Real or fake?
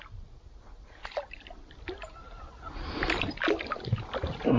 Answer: real